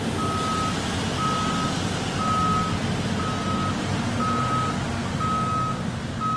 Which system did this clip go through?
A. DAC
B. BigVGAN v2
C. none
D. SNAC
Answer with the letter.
C